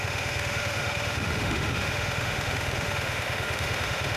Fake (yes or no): yes